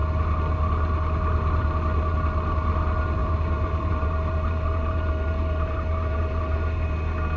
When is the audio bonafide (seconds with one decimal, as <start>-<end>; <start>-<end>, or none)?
0.0-3.2; 6.9-7.4